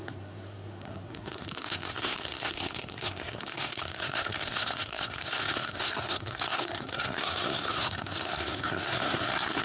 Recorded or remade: remade